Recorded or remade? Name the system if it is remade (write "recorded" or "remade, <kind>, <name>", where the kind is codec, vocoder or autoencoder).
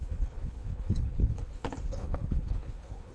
remade, codec, HILCodec